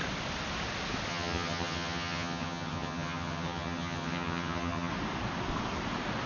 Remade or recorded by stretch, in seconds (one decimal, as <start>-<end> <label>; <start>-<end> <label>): 0.0-1.1 recorded; 1.1-4.9 remade; 4.9-6.3 recorded